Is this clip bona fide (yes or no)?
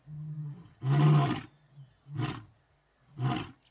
yes